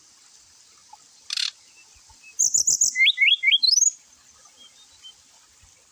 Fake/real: real